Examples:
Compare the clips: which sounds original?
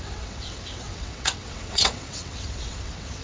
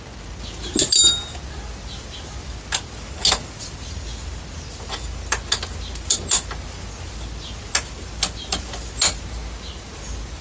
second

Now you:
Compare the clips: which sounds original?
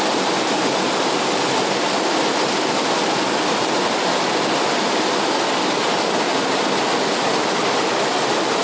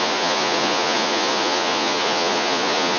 first